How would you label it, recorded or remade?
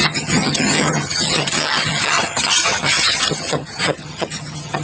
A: remade